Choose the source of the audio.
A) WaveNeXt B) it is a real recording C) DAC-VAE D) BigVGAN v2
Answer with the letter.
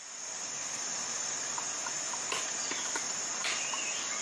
B